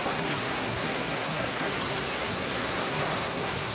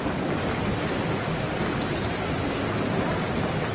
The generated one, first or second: first